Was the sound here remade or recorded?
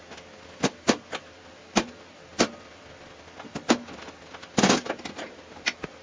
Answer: recorded